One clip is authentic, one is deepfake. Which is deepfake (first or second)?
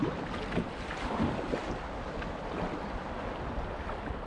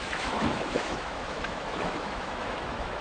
second